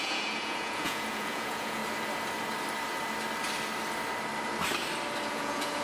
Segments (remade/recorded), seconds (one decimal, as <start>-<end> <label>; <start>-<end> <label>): 0.0-1.8 remade; 1.8-5.3 recorded; 5.3-5.8 remade